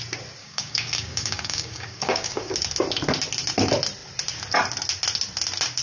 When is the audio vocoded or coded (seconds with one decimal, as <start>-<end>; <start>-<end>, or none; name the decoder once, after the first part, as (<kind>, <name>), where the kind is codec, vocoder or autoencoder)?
0.4-2.5 (codec, DAC)